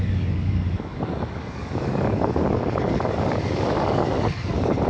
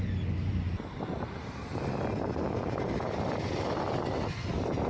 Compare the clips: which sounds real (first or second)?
second